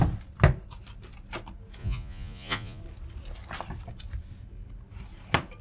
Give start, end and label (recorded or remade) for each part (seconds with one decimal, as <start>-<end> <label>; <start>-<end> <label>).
0.0-1.8 recorded; 1.8-2.8 remade; 2.8-5.6 recorded